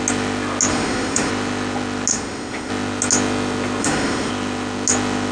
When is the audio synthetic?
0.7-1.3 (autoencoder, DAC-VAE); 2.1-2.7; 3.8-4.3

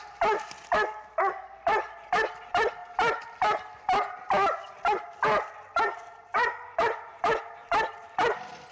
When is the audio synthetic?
none

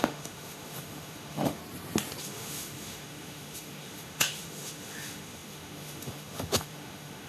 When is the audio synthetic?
0.0-1.6 (autoencoder, DAC-VAE); 2.2-7.3

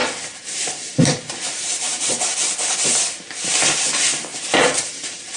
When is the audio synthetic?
0.6-2.1 (vocoder, BigVGAN v2)

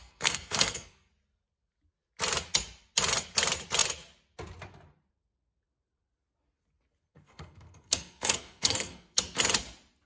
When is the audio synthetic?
0.0-1.1 (codec, SNAC); 7.1-9.2

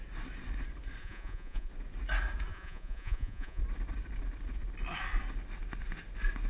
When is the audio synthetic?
1.0-1.7 (vocoder, Vocos); 2.5-3.6

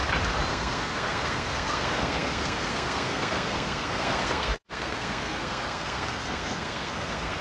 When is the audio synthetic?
0.5-7.4 (codec, SNAC)